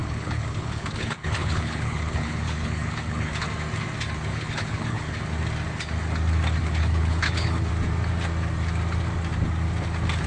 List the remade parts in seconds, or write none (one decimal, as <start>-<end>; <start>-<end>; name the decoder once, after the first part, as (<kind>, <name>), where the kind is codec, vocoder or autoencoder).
0.0-3.3 (codec, HILCodec); 4.3-5.2; 6.6-7.7